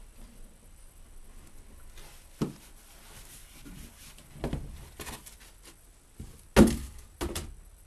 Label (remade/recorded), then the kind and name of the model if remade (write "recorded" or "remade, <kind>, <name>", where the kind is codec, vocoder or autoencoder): recorded